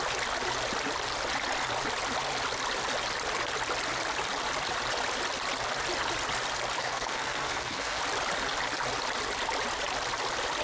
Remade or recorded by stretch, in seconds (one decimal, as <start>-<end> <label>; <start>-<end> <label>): 0.0-6.8 recorded; 6.8-8.0 remade; 8.0-10.6 recorded